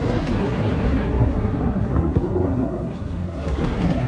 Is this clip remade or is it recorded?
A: remade